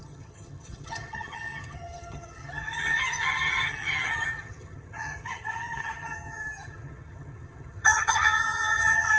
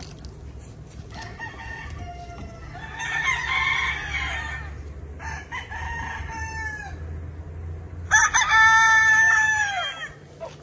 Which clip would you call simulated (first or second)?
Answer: first